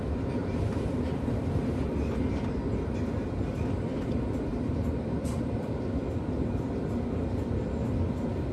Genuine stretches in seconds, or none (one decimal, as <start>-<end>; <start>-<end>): 0.0-0.4; 1.8-4.5; 6.0-8.5